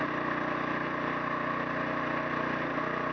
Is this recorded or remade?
recorded